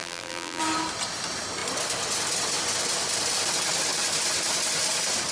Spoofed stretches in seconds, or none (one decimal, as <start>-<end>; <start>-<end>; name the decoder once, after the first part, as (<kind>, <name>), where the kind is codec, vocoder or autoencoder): 0.0-0.6 (vocoder, BigVGAN v2)